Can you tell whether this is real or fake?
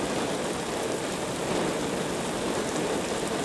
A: real